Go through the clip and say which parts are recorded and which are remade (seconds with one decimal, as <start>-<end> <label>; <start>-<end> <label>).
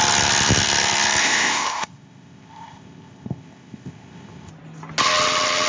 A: 0.0-1.2 recorded; 1.2-4.5 remade; 4.5-5.7 recorded